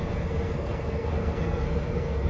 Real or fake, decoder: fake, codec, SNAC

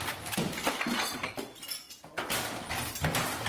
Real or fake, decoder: real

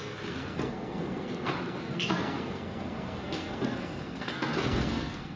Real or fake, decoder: fake, codec, SNAC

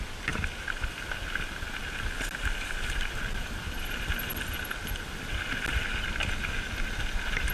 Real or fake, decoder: real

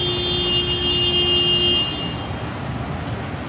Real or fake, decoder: real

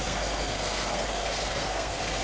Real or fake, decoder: fake, codec, SNAC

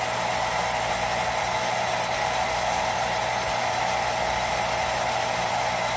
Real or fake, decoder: real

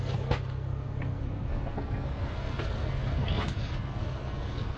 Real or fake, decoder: fake, codec, SNAC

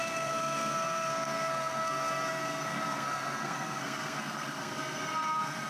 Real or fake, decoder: fake, codec, SNAC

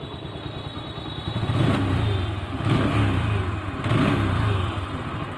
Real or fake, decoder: real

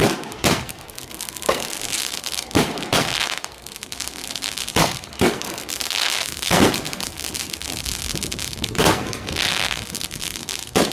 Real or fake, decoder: fake, codec, SNAC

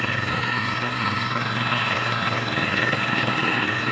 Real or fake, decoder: fake, codec, SNAC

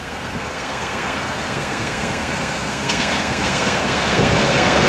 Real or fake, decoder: fake, codec, SNAC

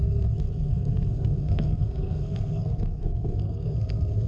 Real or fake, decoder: fake, codec, SNAC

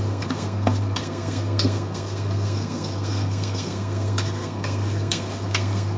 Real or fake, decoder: fake, codec, SNAC